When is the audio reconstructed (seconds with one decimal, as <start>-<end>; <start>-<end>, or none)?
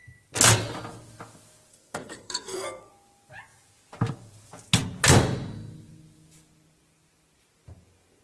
1.7-2.9